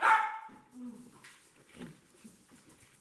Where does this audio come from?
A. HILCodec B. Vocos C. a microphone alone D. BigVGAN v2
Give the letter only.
C